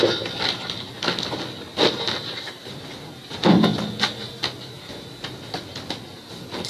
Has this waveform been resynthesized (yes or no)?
no